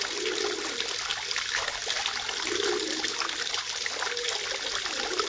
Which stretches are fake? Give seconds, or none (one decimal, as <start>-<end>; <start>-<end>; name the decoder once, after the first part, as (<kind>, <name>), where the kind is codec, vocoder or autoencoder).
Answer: none